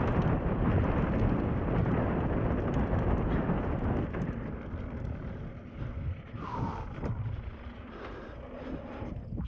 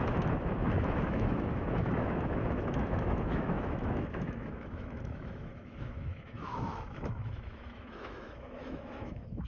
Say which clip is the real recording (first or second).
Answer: first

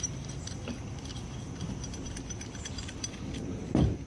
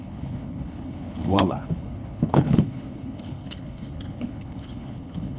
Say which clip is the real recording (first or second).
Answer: first